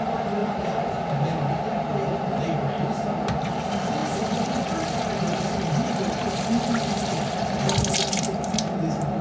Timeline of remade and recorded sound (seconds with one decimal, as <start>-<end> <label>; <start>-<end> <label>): 0.0-1.9 recorded; 1.9-2.5 remade; 2.5-4.0 recorded; 4.0-5.9 remade; 5.9-9.2 recorded